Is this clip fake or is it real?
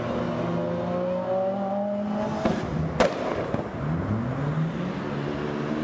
real